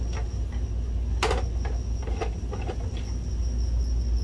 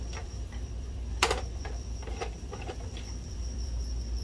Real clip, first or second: first